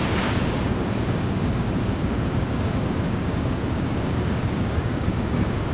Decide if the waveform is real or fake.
fake